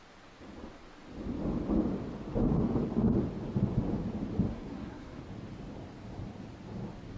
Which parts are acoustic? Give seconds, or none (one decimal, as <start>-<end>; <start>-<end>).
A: 0.0-4.5; 5.2-7.2